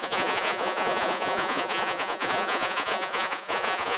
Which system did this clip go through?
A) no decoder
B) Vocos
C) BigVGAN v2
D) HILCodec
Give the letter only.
B